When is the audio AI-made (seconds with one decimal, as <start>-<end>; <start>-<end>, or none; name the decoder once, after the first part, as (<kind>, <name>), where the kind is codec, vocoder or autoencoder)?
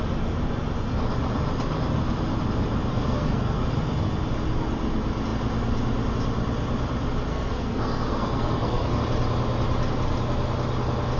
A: 2.9-3.6 (codec, SNAC); 7.3-9.0